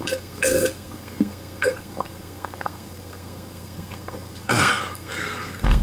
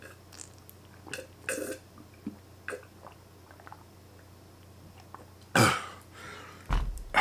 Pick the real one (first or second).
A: second